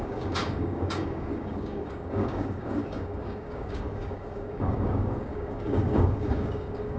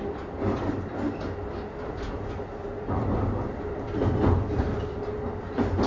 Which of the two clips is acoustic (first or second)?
second